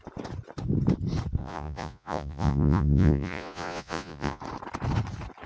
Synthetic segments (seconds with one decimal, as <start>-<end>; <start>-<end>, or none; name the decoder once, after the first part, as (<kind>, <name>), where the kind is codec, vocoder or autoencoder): 1.4-4.4 (vocoder, Vocos)